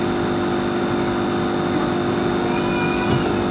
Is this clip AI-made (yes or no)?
no